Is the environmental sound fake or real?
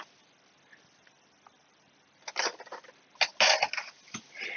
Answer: real